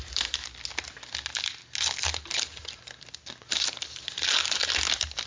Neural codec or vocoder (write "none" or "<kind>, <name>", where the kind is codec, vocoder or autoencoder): none